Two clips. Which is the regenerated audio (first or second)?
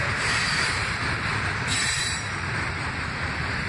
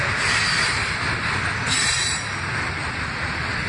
first